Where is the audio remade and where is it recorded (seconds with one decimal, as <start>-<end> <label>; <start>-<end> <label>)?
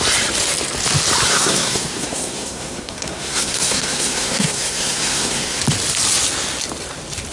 0.0-1.3 recorded; 1.3-5.6 remade; 5.6-7.3 recorded